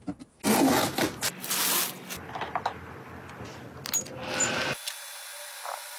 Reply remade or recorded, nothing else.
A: recorded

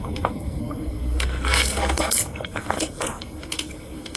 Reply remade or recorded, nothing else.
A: remade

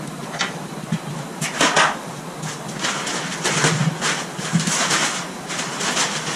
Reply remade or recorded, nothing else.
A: recorded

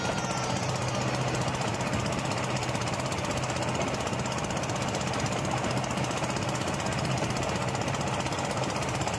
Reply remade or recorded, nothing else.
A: recorded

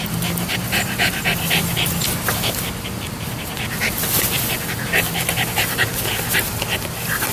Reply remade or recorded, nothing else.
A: recorded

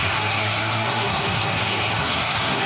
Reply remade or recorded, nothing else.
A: remade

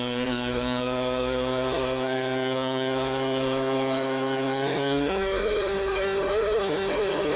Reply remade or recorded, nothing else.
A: remade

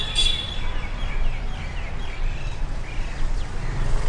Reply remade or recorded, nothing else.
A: recorded